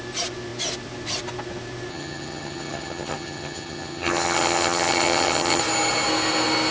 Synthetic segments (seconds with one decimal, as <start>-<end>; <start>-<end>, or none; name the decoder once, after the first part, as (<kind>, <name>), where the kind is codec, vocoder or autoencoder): 1.9-5.6 (vocoder, HiFi-GAN)